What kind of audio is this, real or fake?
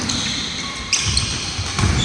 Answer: real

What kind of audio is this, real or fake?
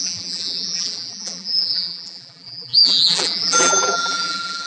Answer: fake